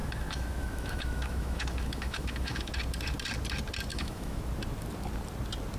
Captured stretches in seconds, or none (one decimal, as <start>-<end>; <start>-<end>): 2.7-3.9; 4.4-5.8